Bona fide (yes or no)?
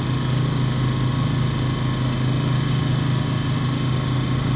yes